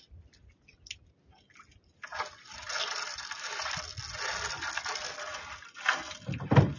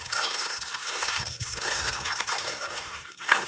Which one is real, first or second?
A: first